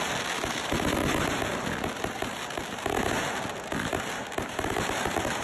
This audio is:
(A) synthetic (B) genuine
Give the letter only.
B